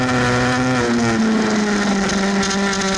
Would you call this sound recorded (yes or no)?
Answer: yes